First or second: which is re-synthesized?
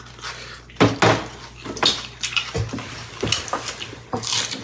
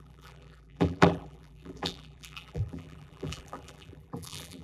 second